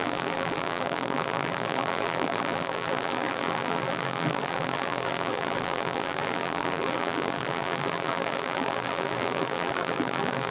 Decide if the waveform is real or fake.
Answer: fake